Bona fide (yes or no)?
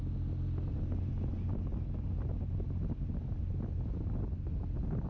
yes